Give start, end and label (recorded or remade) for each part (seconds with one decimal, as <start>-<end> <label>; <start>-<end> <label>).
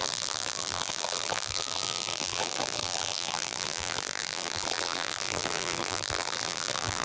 0.0-7.0 remade